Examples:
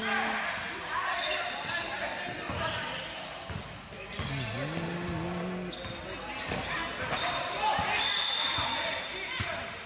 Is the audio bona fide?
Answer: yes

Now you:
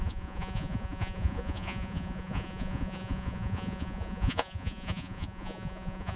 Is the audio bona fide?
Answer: no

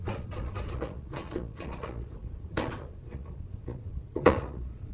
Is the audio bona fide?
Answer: no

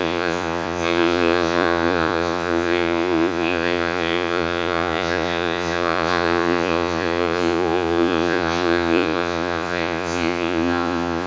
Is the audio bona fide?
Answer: no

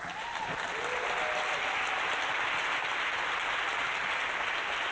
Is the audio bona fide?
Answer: yes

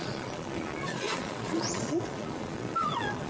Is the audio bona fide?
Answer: no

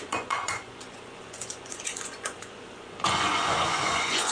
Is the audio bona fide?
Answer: no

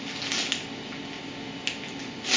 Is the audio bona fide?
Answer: yes